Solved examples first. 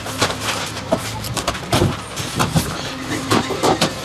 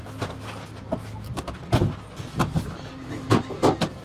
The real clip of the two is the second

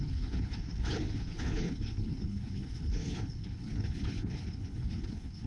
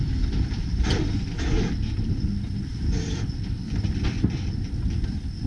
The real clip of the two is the second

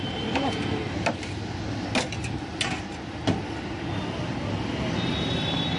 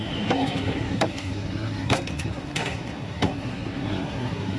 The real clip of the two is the first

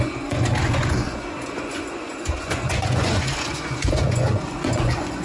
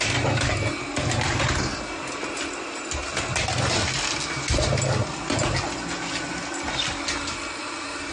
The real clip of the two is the second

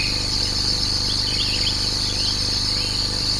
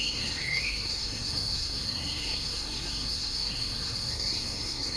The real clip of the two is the first